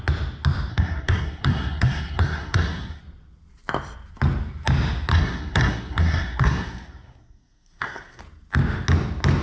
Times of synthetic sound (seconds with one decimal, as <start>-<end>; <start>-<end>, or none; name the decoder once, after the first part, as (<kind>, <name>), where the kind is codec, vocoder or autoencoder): 0.7-3.0 (codec, SNAC); 5.1-8.2